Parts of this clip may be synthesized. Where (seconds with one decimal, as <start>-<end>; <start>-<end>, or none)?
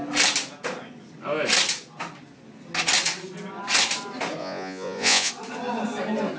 4.4-5.3